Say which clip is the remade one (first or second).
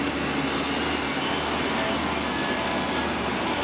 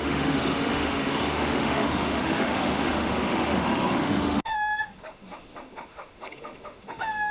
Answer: second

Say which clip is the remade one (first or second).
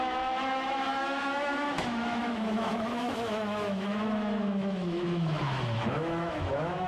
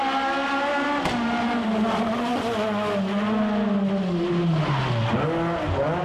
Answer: first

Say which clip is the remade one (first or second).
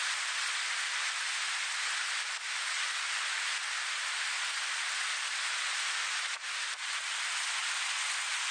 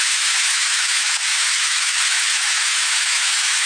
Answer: second